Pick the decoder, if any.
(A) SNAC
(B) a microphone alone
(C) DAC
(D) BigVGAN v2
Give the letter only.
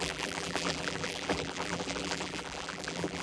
D